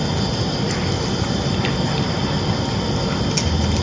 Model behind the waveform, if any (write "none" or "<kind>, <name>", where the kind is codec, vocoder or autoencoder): none